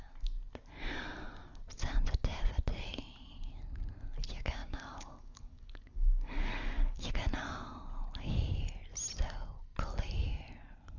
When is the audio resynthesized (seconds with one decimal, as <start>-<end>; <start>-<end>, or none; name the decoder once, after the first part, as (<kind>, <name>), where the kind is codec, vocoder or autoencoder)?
4.6-7.1 (codec, DAC)